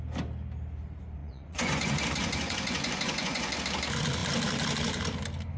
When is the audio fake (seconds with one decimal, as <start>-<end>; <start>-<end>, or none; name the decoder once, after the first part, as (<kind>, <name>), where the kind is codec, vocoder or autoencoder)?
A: 1.2-3.6 (vocoder, Vocos)